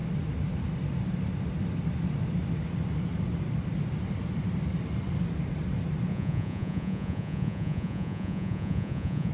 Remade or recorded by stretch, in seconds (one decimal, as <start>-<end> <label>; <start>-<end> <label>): 0.0-6.1 recorded; 6.1-9.3 remade